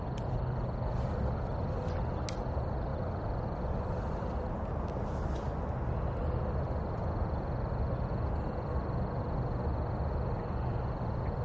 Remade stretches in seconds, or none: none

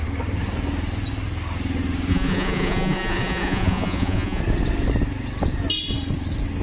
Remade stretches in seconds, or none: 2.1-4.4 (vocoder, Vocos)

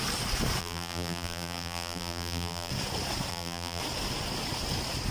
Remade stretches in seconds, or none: 0.6-2.7 (vocoder, BigVGAN v2); 3.3-3.8

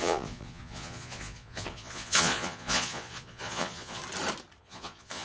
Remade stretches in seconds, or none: 0.0-4.0 (vocoder, Vocos); 4.6-5.2

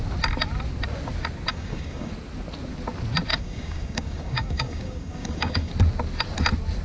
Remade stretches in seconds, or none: 1.5-2.1 (codec, DAC); 3.3-5.7

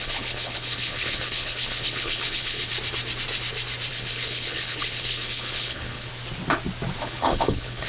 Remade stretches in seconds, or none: 0.0-2.7 (codec, HILCodec); 3.9-6.1; 7.0-7.9